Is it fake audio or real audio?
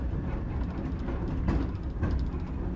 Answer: real